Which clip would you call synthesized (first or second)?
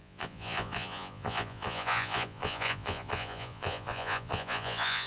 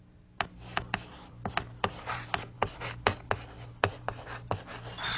first